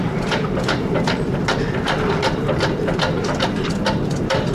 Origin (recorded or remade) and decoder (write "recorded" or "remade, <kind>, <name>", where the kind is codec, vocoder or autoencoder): recorded